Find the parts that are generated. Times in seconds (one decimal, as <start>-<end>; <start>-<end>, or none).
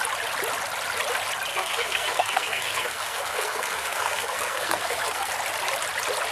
1.5-5.3